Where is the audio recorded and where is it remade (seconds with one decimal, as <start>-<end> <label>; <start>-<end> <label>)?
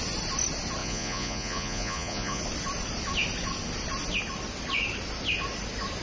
0.0-0.8 recorded; 0.8-2.4 remade; 2.4-6.0 recorded